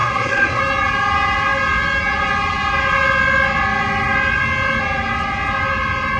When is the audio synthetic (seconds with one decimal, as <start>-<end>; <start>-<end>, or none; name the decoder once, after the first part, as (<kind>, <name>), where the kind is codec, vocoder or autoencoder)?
0.0-0.6 (codec, SNAC)